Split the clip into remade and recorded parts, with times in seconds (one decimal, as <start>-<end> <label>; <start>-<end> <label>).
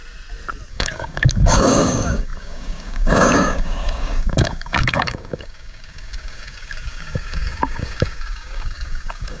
0.0-0.7 recorded; 0.7-9.4 remade